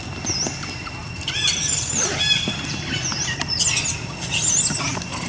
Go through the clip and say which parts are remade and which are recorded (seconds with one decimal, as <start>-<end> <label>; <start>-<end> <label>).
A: 0.0-5.3 recorded